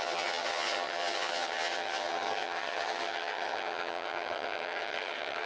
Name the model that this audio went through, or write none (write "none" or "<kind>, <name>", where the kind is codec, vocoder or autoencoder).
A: vocoder, HiFi-GAN